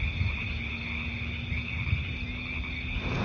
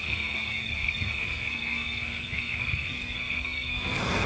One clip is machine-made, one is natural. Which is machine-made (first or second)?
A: second